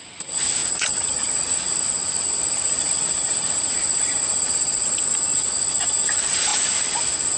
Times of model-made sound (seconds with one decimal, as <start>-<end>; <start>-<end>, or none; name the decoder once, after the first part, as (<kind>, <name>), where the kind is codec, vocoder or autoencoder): 0.6-2.2 (vocoder, Vocos)